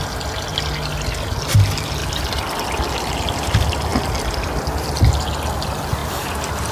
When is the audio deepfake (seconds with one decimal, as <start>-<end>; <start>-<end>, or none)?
none